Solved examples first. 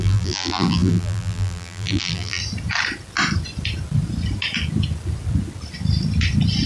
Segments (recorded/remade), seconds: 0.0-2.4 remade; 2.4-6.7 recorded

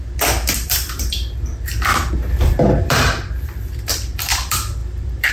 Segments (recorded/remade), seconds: 0.0-1.9 remade; 1.9-2.9 recorded; 2.9-5.3 remade

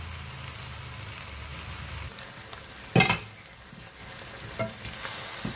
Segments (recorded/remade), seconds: 0.0-5.6 recorded

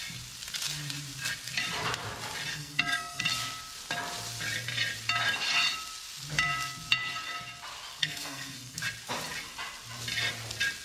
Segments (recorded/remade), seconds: 0.0-2.5 recorded; 2.5-3.2 remade; 3.2-7.9 recorded; 7.9-8.8 remade; 8.8-10.8 recorded

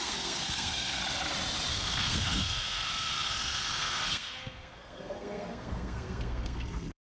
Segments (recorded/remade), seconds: 0.0-1.0 remade; 1.0-1.7 recorded; 1.7-7.1 remade